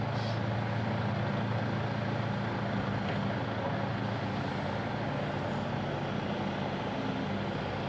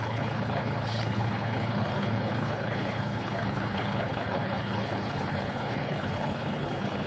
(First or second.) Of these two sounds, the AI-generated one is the second